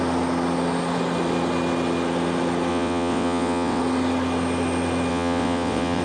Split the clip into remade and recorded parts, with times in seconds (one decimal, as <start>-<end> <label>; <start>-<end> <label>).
0.0-2.7 recorded; 2.7-3.8 remade; 3.8-5.1 recorded; 5.1-6.0 remade